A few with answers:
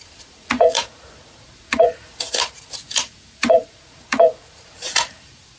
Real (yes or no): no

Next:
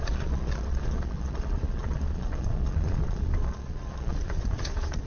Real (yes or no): no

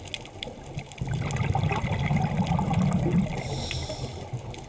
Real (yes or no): yes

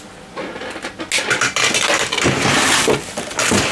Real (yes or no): yes